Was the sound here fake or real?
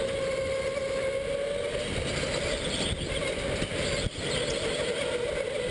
real